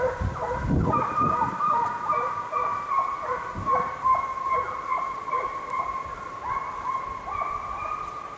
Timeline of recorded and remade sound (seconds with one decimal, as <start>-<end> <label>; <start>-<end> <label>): 0.0-8.4 recorded